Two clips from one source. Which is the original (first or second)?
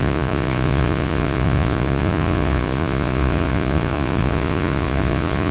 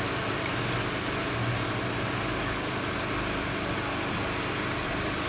second